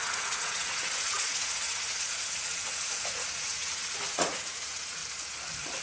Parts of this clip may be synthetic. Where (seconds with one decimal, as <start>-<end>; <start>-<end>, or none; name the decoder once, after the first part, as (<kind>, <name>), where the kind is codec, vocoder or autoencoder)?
0.0-5.0 (vocoder, Vocos)